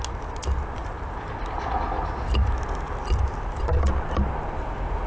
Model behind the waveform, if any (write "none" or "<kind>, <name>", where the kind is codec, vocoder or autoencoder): none